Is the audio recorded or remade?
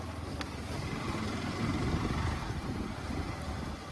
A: recorded